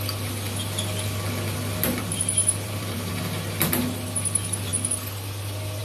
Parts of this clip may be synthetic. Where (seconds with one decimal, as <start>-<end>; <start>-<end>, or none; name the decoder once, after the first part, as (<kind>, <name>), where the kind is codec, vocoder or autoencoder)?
2.0-3.1 (vocoder, BigVGAN v2)